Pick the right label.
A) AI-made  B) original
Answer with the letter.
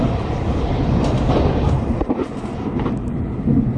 B